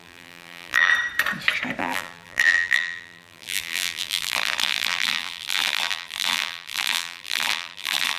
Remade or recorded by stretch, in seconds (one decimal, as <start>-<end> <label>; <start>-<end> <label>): 0.0-0.9 remade; 0.9-1.8 recorded; 1.8-8.2 remade